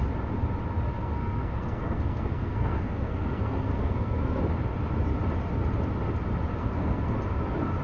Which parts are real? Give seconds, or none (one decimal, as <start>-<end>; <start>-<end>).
0.0-1.0; 4.4-6.6; 7.1-7.8